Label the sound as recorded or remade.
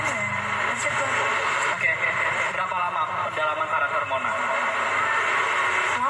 recorded